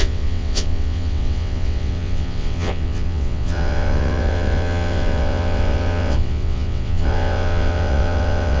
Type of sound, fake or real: fake